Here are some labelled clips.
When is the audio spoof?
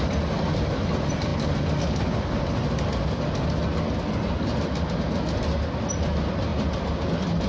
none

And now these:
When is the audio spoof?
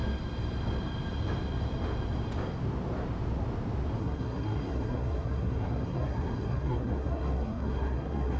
4.0-8.4 (codec, SNAC)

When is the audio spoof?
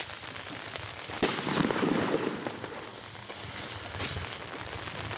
none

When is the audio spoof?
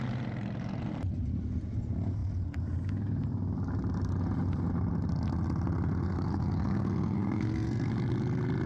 6.0-7.9 (codec, SNAC)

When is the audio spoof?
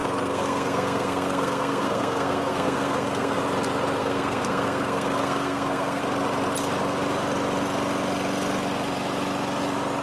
0.0-3.4 (codec, SNAC); 4.0-6.0